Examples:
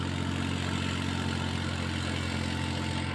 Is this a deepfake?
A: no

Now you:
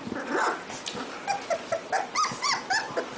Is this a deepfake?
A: no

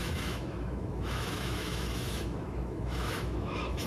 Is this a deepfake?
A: yes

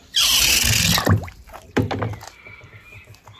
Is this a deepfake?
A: no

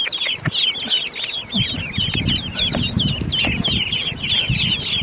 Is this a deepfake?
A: no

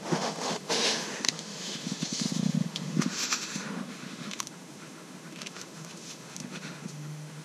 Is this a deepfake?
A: yes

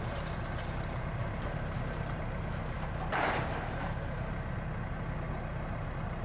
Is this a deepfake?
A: no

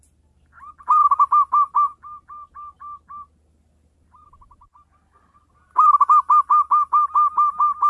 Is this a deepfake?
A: no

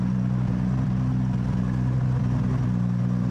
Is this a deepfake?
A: no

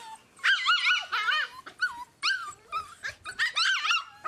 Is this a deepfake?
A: no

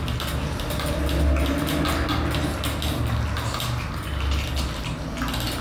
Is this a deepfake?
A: no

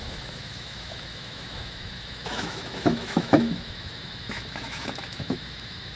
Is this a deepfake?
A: yes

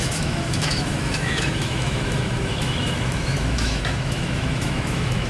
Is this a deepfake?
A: yes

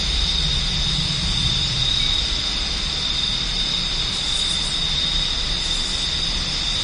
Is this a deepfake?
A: no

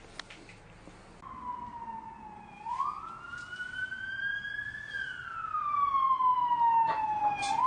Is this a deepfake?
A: no